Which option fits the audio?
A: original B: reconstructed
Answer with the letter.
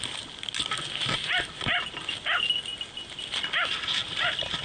A